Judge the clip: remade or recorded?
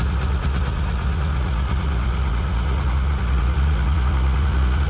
remade